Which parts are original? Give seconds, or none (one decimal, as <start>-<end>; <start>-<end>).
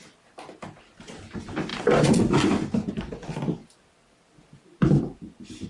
0.0-1.7; 2.9-3.6